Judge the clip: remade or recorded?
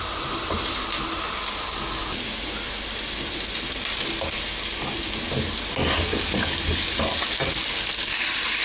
recorded